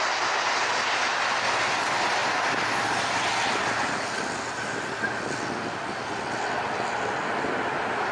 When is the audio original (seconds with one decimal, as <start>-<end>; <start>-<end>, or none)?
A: 0.0-8.1